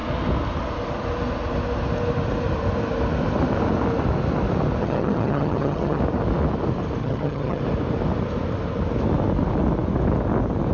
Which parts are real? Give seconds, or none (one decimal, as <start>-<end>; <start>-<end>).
0.0-4.8; 6.0-7.0; 7.6-10.7